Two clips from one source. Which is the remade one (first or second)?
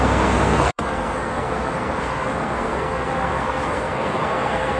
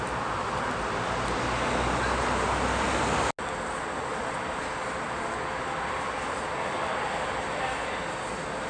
first